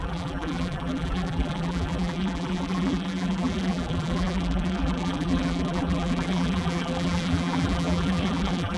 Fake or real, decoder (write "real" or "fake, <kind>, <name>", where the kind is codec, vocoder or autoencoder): fake, vocoder, BigVGAN v2